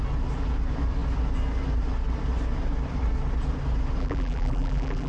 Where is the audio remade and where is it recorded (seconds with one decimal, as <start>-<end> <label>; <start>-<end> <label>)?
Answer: 0.0-4.0 recorded; 4.0-5.1 remade